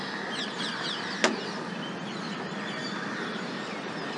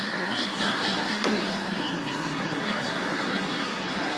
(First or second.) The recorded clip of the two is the first